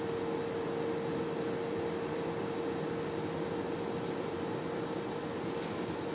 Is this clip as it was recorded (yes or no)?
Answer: yes